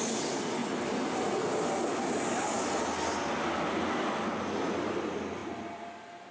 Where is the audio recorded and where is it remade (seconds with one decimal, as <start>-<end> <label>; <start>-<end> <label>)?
0.0-6.3 recorded